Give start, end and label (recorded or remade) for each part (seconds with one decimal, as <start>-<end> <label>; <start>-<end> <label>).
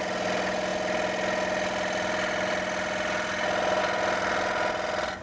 0.0-5.2 recorded